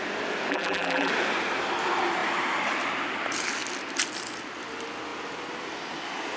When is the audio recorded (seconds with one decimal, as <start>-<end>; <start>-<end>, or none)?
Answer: 0.0-0.5; 1.1-6.4